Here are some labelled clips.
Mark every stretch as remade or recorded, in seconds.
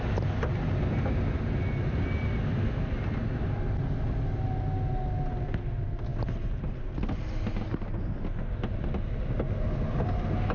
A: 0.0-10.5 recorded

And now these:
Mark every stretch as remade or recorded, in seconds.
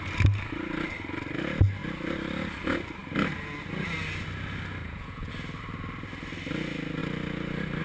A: 0.0-4.8 recorded; 4.8-5.3 remade; 5.3-7.8 recorded